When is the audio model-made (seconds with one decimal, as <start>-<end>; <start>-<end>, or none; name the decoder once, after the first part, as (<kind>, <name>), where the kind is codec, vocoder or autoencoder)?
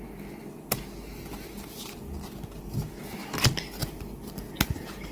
1.1-2.9 (vocoder, BigVGAN v2); 3.8-5.1